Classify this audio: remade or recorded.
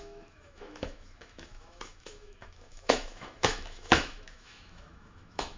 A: remade